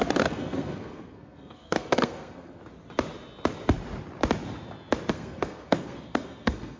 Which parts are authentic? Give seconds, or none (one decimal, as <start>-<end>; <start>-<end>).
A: 2.6-5.1